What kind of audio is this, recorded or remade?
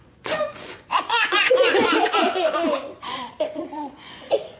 remade